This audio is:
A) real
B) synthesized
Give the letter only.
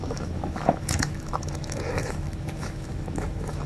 B